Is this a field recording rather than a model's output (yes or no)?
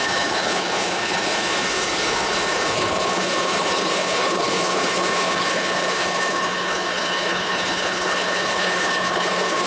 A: no